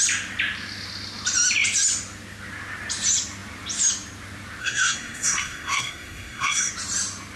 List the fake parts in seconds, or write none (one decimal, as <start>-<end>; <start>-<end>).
4.6-6.7